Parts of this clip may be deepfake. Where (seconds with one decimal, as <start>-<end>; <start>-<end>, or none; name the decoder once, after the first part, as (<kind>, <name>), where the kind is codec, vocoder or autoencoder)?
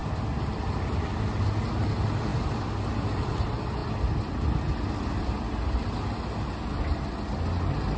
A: none